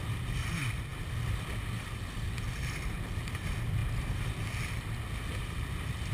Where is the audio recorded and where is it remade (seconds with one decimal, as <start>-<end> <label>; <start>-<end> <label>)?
0.0-6.1 recorded